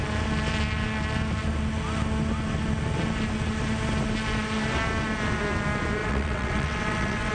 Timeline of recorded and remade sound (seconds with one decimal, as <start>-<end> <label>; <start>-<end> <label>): 0.0-6.0 recorded; 6.0-7.3 remade